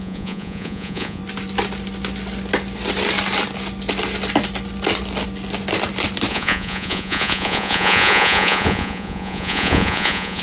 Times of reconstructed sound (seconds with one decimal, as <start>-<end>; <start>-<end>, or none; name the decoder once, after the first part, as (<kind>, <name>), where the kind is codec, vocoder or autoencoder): 0.0-1.2 (vocoder, Vocos); 6.3-10.4